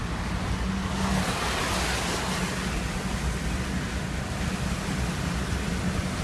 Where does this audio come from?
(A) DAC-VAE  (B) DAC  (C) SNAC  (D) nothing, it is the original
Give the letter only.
D